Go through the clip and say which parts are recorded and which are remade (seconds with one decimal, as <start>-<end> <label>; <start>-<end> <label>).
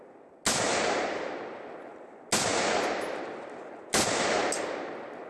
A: 0.0-5.3 recorded